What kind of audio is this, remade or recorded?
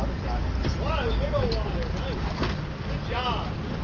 recorded